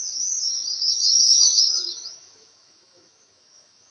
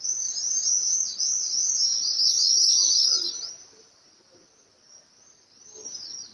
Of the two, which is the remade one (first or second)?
first